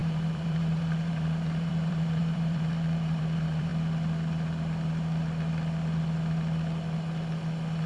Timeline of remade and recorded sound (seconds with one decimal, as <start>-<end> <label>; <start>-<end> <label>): 0.0-3.7 remade; 3.7-7.9 recorded